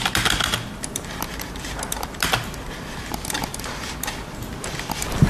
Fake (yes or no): no